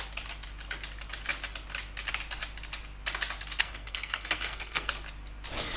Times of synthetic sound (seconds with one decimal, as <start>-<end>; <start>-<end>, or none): 3.6-4.9